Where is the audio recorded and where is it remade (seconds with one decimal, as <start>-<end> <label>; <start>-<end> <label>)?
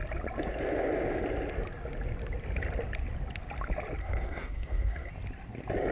0.0-4.0 recorded; 4.0-5.1 remade; 5.1-5.9 recorded